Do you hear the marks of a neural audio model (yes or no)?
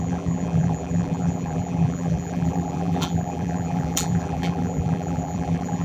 yes